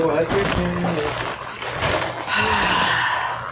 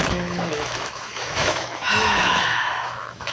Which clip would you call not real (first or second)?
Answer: second